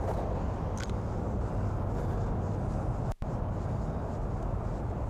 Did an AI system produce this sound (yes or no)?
no